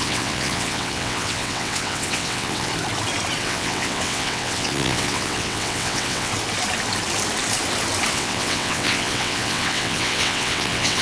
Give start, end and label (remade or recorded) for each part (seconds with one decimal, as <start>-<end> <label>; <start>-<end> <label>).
0.0-2.7 remade; 2.7-3.4 recorded; 3.4-6.3 remade; 6.3-8.1 recorded; 8.1-11.0 remade